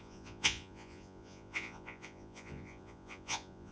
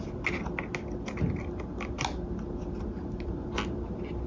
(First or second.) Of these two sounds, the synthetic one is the first